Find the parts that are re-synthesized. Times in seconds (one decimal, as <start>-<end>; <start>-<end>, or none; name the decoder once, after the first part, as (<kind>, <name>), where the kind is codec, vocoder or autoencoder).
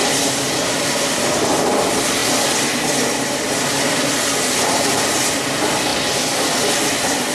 0.0-1.2 (vocoder, BigVGAN v2)